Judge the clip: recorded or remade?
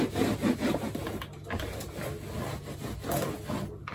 recorded